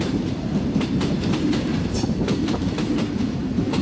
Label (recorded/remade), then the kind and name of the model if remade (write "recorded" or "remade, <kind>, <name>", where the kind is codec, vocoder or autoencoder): remade, vocoder, BigVGAN v2